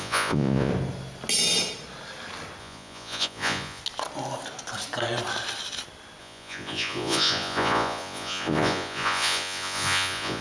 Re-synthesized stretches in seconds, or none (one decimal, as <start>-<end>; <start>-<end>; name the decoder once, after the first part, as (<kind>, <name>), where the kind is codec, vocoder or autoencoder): 0.0-0.7 (vocoder, Vocos); 2.6-3.8; 6.2-10.4